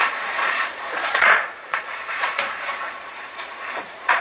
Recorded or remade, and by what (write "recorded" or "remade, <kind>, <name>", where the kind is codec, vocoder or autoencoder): remade, vocoder, Vocos